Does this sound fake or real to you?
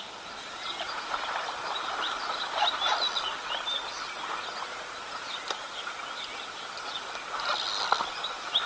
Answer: real